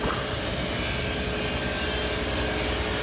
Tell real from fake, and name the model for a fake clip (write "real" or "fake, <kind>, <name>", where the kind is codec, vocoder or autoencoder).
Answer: real